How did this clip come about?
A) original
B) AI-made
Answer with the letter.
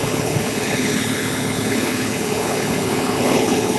B